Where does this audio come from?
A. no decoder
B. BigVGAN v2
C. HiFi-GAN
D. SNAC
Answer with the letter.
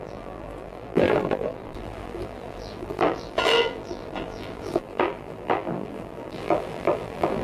B